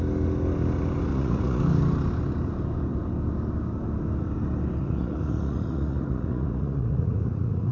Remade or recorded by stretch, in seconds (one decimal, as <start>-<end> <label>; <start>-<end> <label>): 0.0-1.1 recorded; 1.1-1.6 remade; 1.6-4.8 recorded; 4.8-7.7 remade